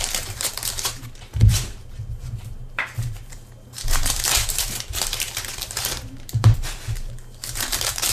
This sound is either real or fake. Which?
fake